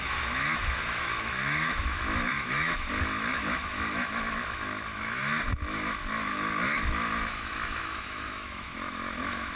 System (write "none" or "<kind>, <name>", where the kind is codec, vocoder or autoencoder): autoencoder, DAC-VAE